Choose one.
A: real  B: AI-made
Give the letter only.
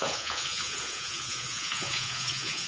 B